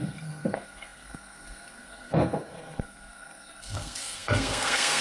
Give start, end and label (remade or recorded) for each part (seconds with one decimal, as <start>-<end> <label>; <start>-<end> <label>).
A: 0.0-5.0 remade